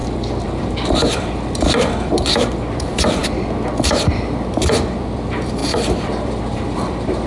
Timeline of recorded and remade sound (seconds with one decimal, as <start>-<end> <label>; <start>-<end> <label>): 0.0-3.2 remade; 3.2-4.7 recorded; 4.7-7.3 remade